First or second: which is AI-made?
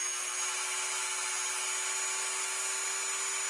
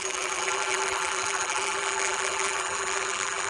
second